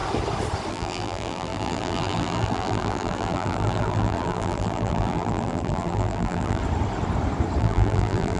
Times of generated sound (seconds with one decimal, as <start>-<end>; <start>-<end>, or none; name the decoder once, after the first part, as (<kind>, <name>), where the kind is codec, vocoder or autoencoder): 0.7-6.6 (vocoder, BigVGAN v2); 7.6-8.4